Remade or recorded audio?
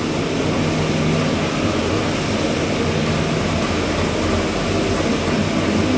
recorded